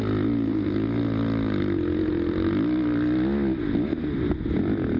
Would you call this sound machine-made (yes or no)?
no